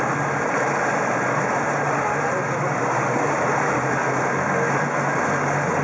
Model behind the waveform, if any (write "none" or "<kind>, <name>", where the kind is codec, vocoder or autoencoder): none